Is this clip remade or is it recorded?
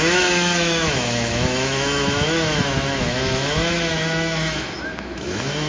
remade